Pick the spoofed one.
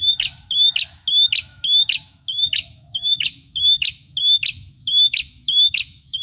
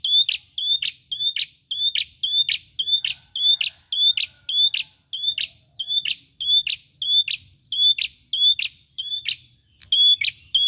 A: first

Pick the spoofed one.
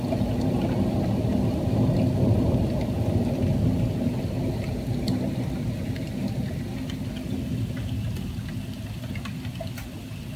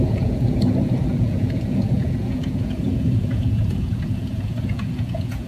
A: second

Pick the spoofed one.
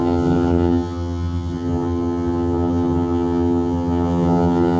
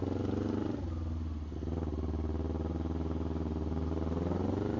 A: first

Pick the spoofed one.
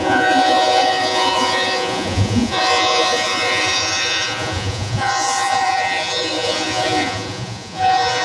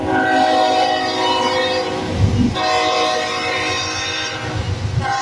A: first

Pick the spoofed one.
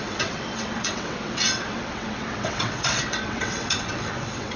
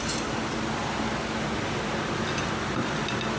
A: first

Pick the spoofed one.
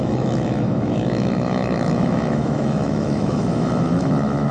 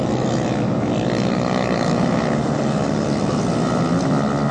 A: first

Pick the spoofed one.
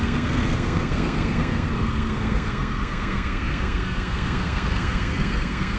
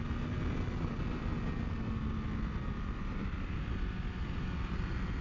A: first